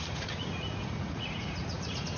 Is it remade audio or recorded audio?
remade